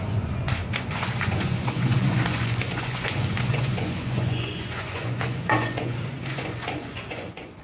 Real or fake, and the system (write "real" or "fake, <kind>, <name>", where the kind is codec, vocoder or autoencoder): fake, vocoder, Vocos